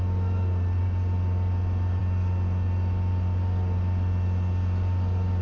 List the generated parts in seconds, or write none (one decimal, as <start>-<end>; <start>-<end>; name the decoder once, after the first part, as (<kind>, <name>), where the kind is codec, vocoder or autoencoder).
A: none

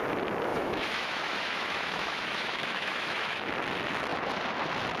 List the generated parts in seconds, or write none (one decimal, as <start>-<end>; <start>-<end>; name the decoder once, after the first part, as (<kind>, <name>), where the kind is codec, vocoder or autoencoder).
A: 0.5-3.5 (autoencoder, DAC-VAE)

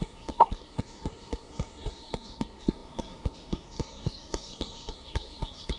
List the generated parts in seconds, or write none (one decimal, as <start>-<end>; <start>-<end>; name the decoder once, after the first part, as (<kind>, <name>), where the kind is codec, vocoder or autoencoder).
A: 0.0-5.8 (codec, SNAC)